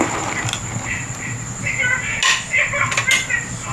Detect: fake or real real